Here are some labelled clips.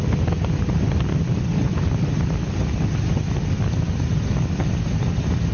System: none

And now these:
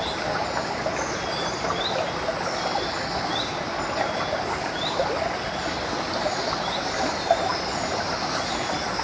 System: none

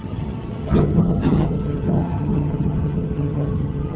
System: vocoder, HiFi-GAN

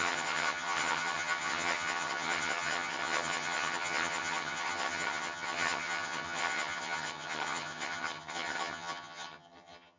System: vocoder, HiFi-GAN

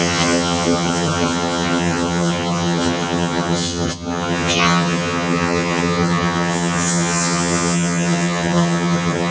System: vocoder, HiFi-GAN